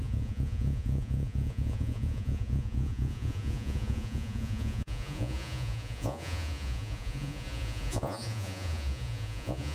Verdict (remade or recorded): remade